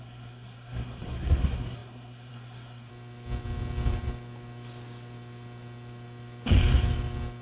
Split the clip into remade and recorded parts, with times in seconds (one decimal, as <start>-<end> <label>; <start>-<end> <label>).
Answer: 0.0-2.9 remade; 2.9-7.4 recorded